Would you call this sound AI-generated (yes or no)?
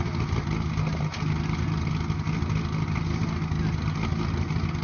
no